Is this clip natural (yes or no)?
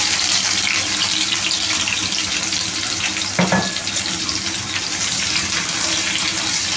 no